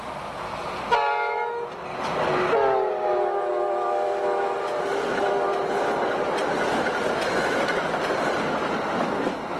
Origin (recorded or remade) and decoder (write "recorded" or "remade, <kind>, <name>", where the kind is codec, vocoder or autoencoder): recorded